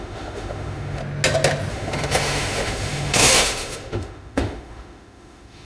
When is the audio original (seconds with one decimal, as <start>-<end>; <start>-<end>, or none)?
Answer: 1.0-1.7